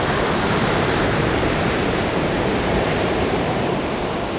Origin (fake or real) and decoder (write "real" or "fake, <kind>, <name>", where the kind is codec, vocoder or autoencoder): fake, vocoder, BigVGAN v2